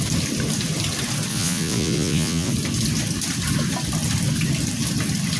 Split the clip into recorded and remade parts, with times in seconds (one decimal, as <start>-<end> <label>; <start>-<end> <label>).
0.0-1.3 recorded; 1.3-2.5 remade; 2.5-5.4 recorded